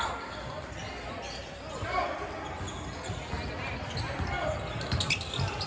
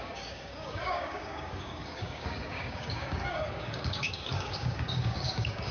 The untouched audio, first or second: first